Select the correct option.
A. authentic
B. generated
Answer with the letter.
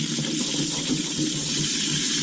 A